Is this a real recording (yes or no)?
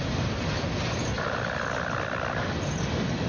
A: yes